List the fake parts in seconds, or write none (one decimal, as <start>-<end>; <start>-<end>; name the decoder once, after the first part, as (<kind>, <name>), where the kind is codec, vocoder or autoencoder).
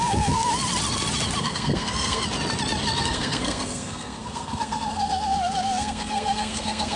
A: 0.0-0.5 (codec, SNAC); 1.4-2.2; 3.0-7.0